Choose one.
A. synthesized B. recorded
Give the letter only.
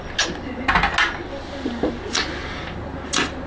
B